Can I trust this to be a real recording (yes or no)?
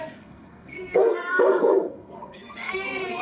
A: no